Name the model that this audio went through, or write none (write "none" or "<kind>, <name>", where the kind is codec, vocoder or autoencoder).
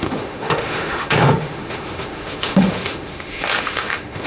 autoencoder, DAC-VAE